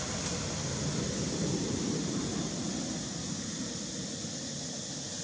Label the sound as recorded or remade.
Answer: recorded